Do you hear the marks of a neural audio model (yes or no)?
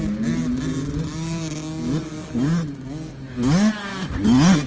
no